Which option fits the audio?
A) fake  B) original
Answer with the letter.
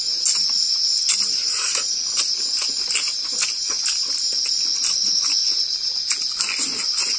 B